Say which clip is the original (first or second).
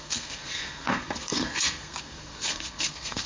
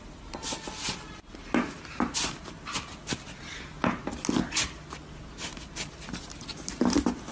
second